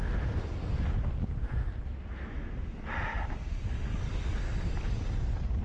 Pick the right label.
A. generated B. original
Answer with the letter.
B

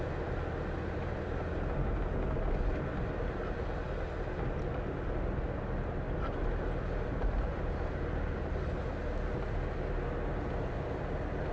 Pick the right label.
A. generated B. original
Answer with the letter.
B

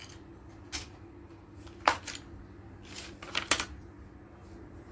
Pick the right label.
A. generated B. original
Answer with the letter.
B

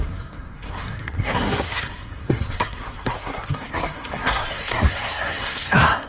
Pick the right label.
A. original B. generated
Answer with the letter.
B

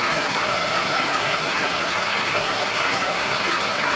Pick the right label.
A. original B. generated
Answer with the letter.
B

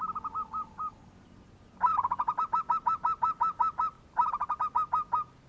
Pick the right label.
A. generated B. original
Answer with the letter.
B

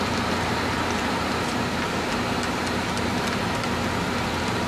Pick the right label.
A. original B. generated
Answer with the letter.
A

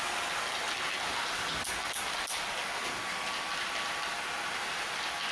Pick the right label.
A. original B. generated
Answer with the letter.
A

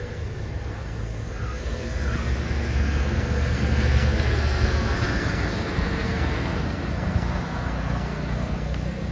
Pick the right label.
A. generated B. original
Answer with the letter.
A